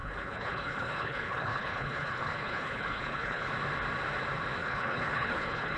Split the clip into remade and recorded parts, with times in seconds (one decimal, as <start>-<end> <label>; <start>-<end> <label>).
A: 0.0-3.5 remade; 3.5-4.6 recorded; 4.6-5.8 remade